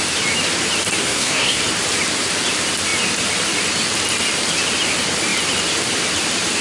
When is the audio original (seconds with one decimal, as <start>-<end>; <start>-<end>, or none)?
0.0-1.0; 1.6-6.6